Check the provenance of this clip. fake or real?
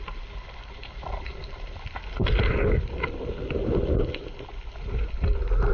real